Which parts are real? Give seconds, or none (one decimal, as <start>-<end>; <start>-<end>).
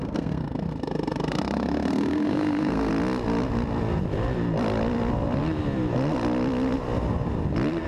2.9-7.9